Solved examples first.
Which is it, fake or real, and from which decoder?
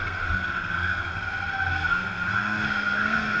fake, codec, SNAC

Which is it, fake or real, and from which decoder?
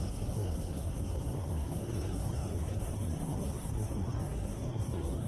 fake, codec, SNAC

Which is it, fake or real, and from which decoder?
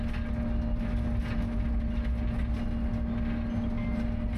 real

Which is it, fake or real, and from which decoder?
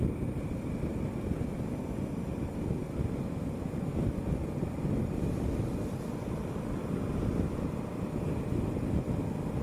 real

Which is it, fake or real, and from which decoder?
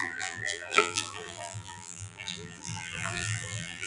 fake, vocoder, BigVGAN v2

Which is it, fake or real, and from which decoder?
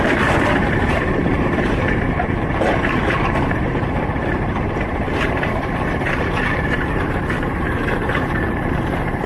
fake, vocoder, BigVGAN v2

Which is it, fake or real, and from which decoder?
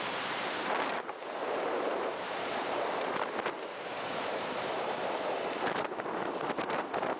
fake, vocoder, BigVGAN v2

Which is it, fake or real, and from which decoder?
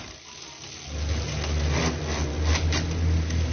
real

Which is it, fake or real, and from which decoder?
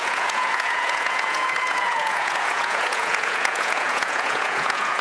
fake, vocoder, Vocos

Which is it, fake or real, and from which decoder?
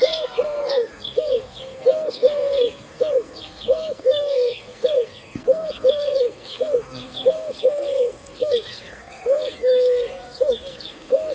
fake, codec, SNAC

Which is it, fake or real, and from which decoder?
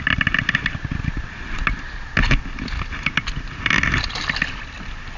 real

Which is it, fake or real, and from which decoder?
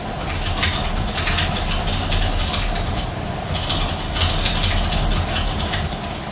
real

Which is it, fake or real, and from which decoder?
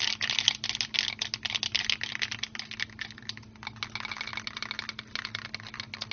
real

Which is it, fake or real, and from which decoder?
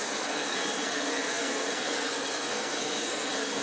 fake, codec, SNAC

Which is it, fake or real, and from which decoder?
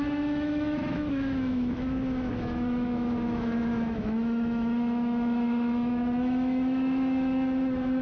fake, autoencoder, DAC-VAE